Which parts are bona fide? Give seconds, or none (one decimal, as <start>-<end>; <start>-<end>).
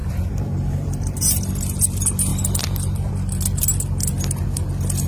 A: 1.5-2.3; 3.1-5.1